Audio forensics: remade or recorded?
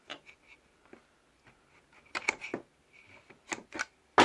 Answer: recorded